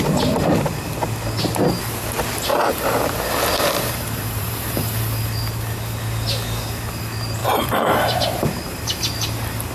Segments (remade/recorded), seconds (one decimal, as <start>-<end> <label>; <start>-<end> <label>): 0.0-2.5 recorded; 2.5-4.9 remade; 4.9-7.4 recorded; 7.4-9.7 remade